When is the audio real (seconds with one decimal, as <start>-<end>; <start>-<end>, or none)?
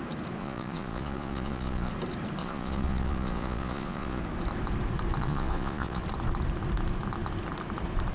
0.0-0.4; 1.9-2.4; 4.2-5.2; 6.0-8.1